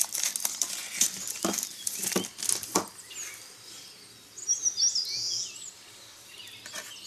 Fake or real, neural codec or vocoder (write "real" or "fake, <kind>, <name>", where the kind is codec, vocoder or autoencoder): real